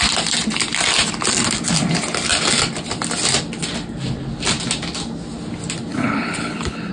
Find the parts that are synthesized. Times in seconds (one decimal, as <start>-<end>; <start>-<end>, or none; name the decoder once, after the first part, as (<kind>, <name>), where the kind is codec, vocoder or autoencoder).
5.9-6.9 (codec, HILCodec)